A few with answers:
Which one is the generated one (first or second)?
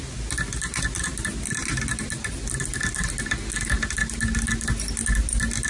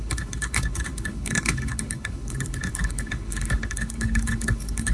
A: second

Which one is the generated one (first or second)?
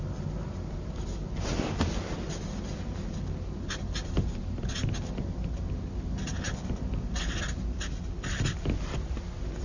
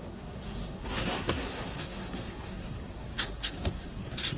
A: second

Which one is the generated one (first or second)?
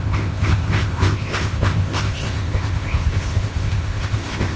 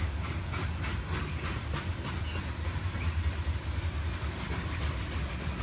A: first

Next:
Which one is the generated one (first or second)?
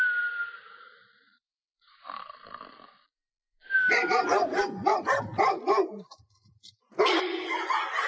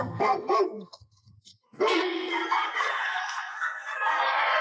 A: second